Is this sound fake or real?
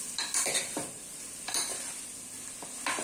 real